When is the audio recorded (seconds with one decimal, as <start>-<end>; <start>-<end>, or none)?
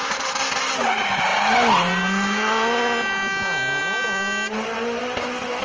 0.0-5.6